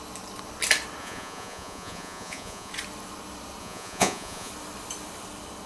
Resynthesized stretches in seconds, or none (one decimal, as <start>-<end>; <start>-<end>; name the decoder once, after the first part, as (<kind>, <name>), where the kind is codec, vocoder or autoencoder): 1.0-2.7 (vocoder, Vocos); 3.6-4.5